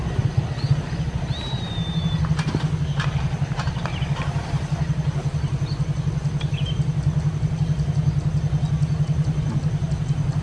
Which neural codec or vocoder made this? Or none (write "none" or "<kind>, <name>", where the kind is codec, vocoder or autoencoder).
none